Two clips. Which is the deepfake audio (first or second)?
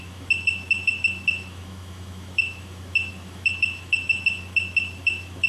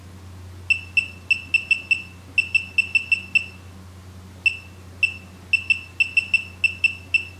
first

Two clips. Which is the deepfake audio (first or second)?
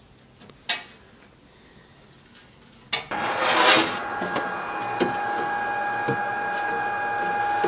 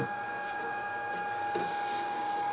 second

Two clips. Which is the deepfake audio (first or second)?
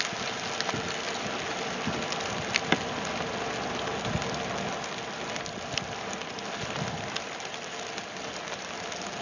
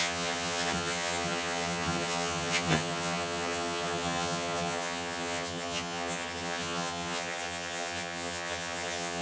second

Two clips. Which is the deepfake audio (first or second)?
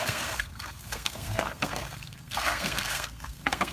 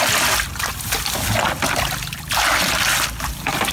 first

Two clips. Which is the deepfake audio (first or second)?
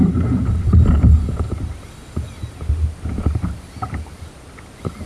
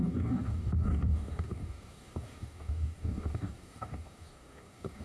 second